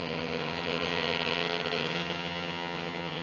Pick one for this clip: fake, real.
fake